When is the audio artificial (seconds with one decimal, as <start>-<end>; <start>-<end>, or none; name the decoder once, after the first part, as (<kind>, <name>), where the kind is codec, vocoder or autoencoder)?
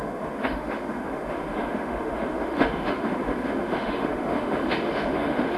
0.0-5.6 (autoencoder, DAC-VAE)